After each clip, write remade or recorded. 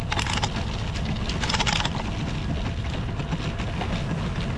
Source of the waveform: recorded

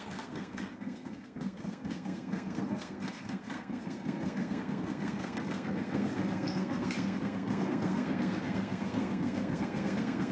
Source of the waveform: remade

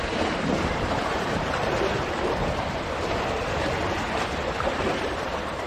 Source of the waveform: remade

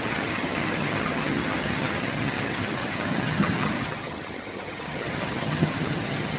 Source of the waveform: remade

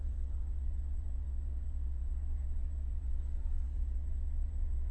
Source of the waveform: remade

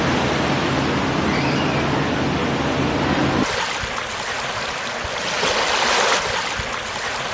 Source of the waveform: recorded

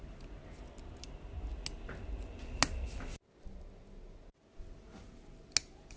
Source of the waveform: recorded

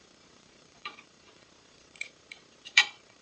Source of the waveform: remade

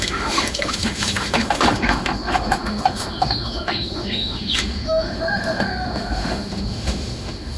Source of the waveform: remade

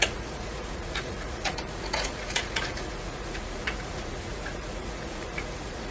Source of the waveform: remade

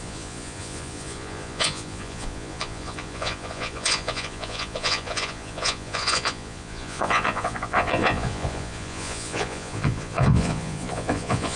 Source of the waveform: remade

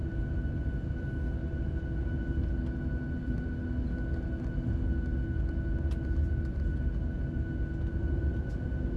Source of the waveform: recorded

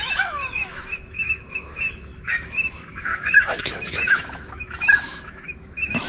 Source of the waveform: remade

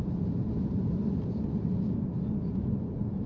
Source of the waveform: recorded